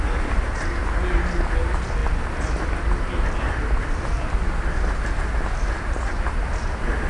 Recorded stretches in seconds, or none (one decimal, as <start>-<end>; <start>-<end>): 0.0-7.1